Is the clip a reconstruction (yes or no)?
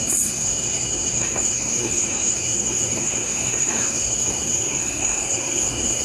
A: yes